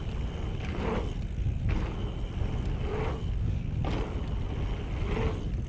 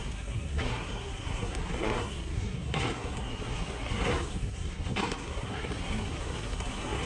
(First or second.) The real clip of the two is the first